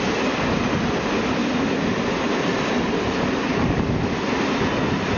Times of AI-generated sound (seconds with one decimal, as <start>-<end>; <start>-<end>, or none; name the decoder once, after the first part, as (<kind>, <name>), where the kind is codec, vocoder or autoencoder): none